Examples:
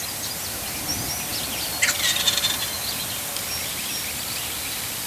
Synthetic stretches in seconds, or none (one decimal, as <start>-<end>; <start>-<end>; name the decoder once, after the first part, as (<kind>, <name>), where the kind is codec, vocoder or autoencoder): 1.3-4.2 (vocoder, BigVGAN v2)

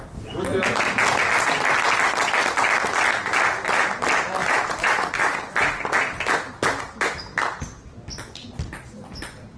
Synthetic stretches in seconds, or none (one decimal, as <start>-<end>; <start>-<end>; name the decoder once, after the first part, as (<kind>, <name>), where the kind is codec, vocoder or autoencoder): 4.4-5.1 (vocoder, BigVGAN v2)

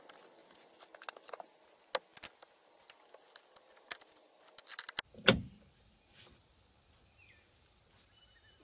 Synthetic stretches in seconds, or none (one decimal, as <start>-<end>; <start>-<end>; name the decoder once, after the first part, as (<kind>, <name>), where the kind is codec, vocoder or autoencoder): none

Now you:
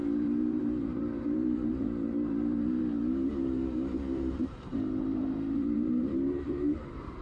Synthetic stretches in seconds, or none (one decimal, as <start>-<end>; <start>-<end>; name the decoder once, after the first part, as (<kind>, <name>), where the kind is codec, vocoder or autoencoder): 0.0-7.2 (vocoder, BigVGAN v2)